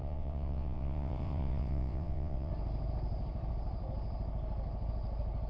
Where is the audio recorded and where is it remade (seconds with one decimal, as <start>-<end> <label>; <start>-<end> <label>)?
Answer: 0.0-2.5 remade; 2.5-5.5 recorded